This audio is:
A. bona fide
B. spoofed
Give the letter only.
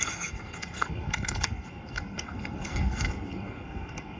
B